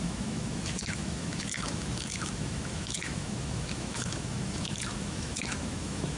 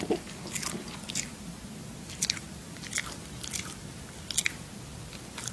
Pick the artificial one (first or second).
first